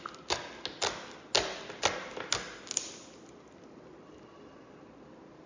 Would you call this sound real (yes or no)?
yes